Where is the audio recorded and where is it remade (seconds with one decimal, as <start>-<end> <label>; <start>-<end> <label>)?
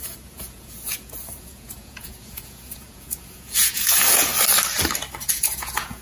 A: 0.0-4.3 remade; 4.3-5.3 recorded; 5.3-6.0 remade